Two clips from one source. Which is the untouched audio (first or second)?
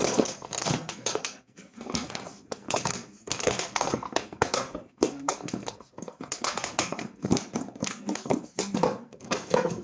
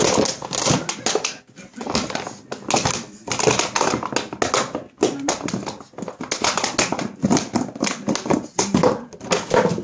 second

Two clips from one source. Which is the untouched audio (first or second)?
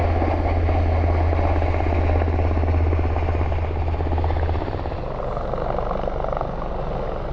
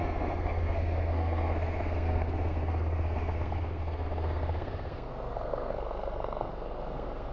first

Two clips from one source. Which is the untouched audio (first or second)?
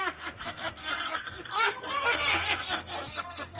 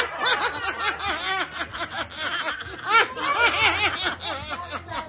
second